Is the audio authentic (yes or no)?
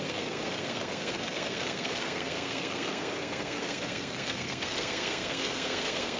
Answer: no